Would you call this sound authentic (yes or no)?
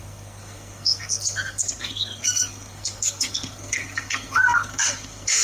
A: no